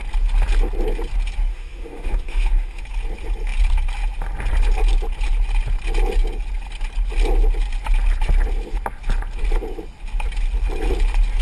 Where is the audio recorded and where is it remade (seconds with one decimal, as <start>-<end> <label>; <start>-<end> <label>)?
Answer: 0.0-1.5 recorded; 1.5-2.8 remade; 2.8-11.4 recorded